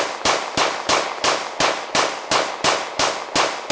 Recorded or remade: recorded